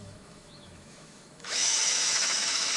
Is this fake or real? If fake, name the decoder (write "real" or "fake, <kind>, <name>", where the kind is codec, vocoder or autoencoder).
fake, autoencoder, DAC-VAE